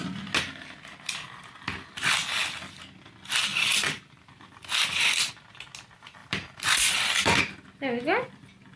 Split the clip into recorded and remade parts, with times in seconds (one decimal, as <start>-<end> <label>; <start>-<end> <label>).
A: 0.0-3.5 recorded; 3.5-5.3 remade; 5.3-6.2 recorded; 6.2-7.4 remade; 7.4-8.8 recorded